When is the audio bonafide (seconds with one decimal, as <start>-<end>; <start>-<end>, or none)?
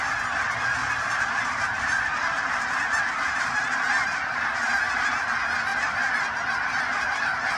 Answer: 0.0-0.8; 4.9-5.7